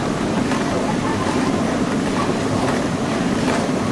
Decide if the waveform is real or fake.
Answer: real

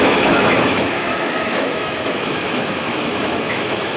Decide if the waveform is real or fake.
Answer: fake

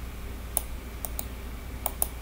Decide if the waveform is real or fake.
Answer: real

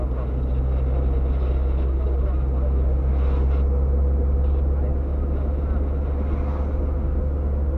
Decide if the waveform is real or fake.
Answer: real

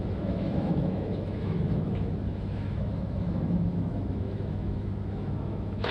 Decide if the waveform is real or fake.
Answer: fake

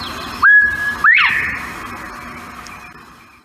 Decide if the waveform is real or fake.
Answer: real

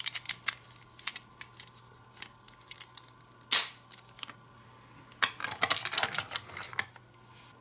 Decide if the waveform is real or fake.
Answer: real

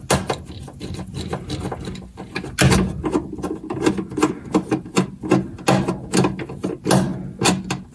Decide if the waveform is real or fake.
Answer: real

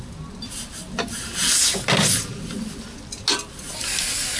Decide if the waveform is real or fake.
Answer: real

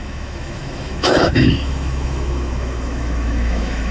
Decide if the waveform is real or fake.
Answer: fake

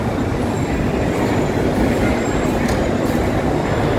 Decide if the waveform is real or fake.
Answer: real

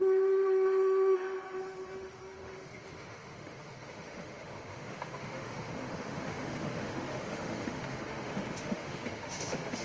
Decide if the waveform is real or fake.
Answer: fake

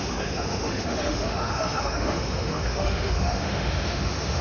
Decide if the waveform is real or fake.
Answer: fake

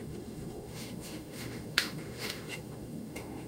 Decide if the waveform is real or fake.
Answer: fake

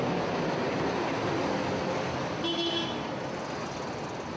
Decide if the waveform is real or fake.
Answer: real